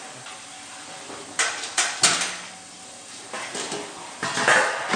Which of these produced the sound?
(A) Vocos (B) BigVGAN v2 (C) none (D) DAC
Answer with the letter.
C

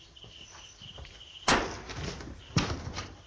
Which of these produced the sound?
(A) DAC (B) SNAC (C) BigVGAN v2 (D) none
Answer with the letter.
D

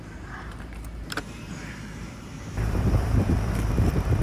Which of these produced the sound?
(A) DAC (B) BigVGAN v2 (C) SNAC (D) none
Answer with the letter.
B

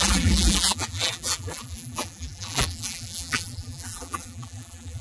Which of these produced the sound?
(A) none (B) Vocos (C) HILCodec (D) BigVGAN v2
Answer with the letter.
D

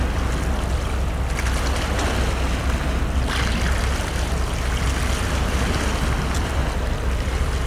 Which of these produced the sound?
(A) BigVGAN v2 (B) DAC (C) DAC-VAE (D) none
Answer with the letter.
D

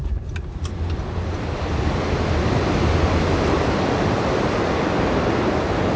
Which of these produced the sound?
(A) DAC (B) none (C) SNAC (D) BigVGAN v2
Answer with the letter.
B